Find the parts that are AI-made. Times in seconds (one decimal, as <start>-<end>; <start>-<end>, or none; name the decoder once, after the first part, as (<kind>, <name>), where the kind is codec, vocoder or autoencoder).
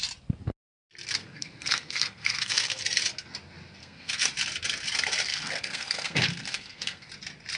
1.2-2.8 (codec, SNAC); 3.8-4.3; 5.3-7.1